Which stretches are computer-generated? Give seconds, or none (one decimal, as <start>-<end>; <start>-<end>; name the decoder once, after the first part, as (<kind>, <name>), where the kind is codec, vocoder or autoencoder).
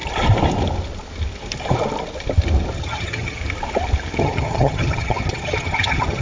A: 2.7-3.4 (vocoder, HiFi-GAN); 4.2-6.2